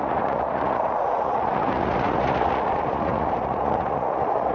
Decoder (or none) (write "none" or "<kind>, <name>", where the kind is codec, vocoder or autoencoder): vocoder, Vocos